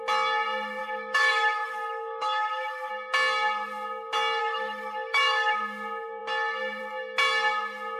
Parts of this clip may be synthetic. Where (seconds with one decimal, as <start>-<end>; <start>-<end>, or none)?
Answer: 0.8-2.9; 4.4-5.6

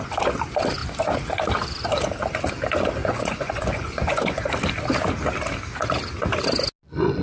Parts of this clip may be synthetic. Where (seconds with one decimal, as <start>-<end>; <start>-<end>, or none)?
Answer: 3.0-4.4

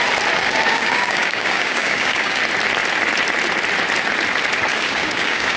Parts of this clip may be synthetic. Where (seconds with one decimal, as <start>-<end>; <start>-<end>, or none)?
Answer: 0.4-2.4; 4.7-5.6

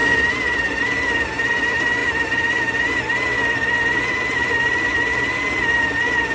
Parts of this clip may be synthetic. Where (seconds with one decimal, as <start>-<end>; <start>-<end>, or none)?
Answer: none